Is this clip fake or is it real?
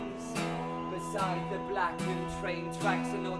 real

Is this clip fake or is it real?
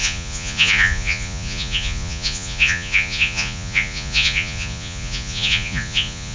fake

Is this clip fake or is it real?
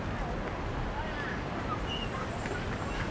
real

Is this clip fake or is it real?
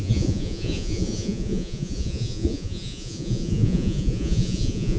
fake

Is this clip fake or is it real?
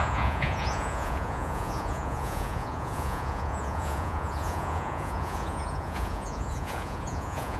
fake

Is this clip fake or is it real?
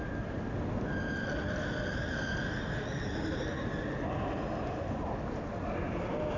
real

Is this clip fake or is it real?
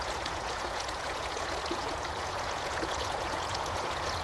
fake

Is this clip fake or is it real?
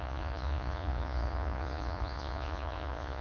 fake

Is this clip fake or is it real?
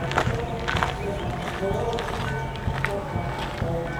real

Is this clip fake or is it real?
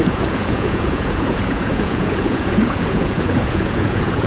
fake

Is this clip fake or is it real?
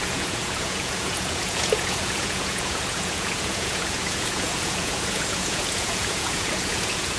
fake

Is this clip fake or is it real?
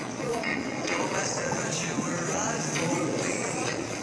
fake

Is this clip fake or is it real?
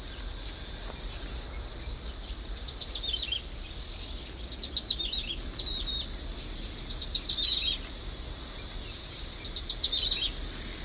real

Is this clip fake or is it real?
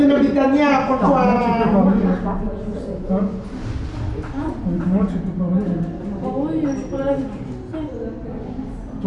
real